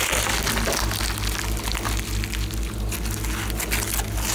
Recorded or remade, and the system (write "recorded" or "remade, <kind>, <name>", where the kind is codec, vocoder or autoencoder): recorded